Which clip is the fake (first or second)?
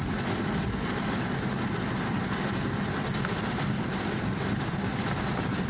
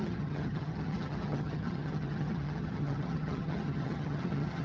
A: second